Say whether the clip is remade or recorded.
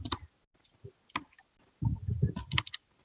recorded